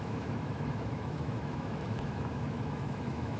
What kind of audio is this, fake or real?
fake